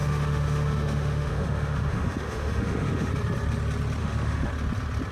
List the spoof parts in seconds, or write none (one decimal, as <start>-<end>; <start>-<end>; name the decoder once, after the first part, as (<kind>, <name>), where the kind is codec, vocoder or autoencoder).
0.0-3.1 (autoencoder, DAC-VAE); 4.0-4.5

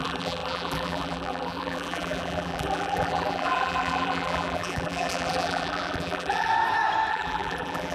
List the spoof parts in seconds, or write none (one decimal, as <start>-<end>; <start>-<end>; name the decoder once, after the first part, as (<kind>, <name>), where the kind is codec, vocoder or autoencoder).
0.0-6.5 (vocoder, BigVGAN v2); 7.1-7.9

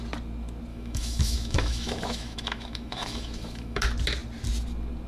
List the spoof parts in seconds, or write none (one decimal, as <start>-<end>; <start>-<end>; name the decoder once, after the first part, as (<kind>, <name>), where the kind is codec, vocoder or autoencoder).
0.7-3.8 (autoencoder, DAC-VAE)

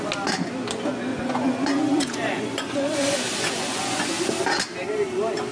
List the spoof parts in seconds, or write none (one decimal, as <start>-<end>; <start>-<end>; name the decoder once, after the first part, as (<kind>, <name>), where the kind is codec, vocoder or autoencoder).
1.1-4.1 (vocoder, Vocos)

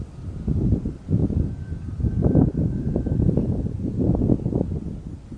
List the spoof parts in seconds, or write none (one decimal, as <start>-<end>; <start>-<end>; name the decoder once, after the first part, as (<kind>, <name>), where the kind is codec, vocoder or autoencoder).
none

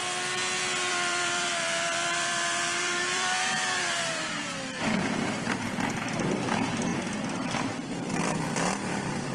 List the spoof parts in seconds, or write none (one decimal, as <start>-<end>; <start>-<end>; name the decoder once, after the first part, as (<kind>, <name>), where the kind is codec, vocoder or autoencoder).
0.9-9.3 (vocoder, BigVGAN v2)